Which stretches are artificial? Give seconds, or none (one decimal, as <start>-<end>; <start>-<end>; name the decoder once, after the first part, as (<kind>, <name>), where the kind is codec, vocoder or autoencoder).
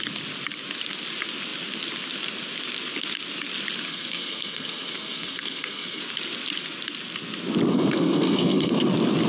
3.9-6.0 (codec, SNAC); 7.7-8.9